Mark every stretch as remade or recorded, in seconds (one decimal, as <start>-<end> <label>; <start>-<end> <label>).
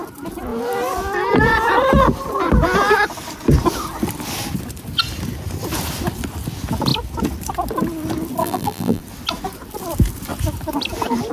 0.0-8.4 recorded; 8.4-9.0 remade; 9.0-11.3 recorded